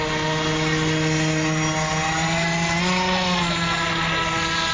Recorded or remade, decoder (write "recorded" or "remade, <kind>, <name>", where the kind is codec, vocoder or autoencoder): recorded